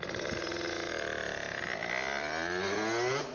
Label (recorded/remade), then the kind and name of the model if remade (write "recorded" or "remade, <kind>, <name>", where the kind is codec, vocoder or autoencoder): recorded